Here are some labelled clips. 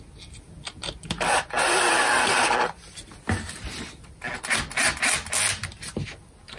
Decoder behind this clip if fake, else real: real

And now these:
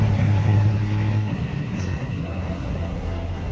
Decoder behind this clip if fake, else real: fake, codec, SNAC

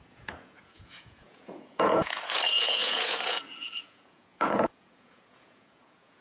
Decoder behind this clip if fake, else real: fake, vocoder, Vocos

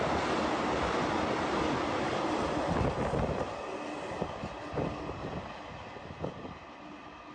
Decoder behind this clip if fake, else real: real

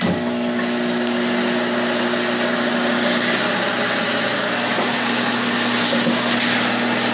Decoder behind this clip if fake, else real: real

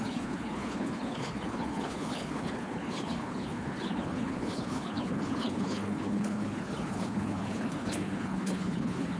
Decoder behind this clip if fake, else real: fake, codec, HILCodec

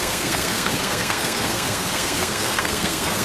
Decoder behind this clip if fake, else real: fake, codec, SNAC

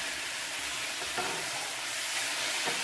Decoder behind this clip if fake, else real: real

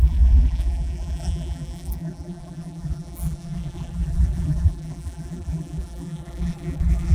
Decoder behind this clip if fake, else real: fake, vocoder, BigVGAN v2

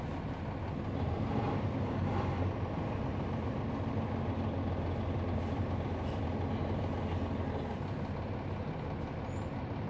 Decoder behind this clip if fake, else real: real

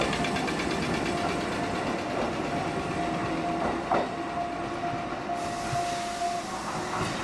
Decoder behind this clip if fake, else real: real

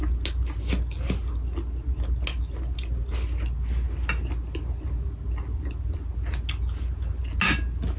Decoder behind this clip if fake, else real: real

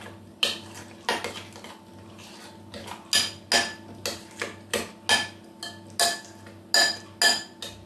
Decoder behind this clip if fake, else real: real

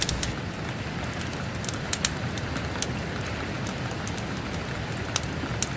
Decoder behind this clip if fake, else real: real